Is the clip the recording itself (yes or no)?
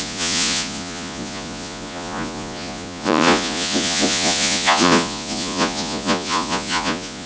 no